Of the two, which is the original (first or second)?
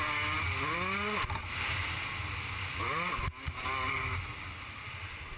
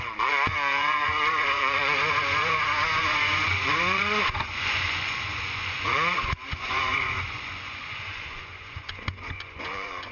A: first